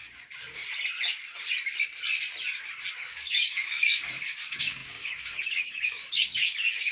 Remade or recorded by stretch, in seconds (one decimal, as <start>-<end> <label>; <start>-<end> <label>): 0.0-0.6 remade; 0.6-2.9 recorded; 2.9-6.9 remade